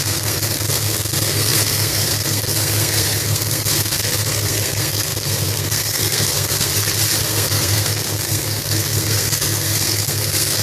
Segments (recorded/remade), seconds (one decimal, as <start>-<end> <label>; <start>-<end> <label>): 0.0-6.7 remade; 6.7-7.2 recorded; 7.2-10.6 remade